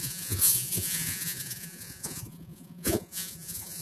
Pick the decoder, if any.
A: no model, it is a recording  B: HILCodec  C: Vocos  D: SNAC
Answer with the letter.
C